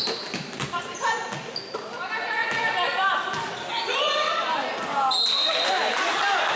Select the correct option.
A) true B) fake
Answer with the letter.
A